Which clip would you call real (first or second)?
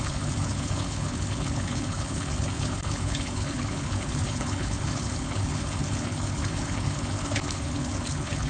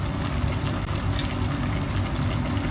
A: second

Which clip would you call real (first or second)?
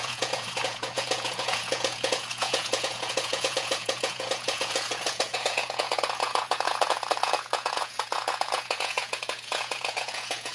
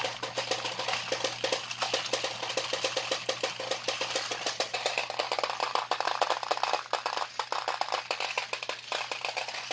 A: second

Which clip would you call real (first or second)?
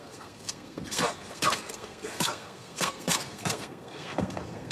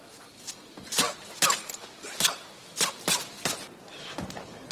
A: second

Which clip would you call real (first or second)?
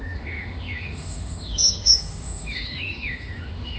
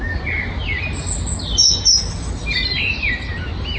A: second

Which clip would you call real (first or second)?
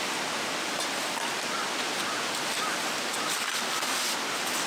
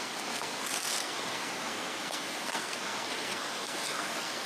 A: first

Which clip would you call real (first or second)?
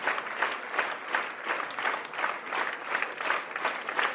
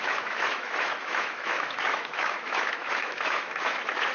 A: first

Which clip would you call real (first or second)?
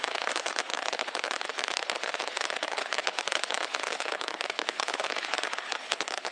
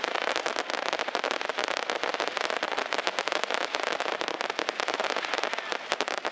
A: second